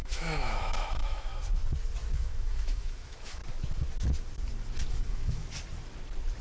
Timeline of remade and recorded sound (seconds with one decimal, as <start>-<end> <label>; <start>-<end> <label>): 0.0-1.3 remade; 1.3-2.1 recorded; 2.1-3.4 remade; 3.4-4.9 recorded; 4.9-5.4 remade; 5.4-6.4 recorded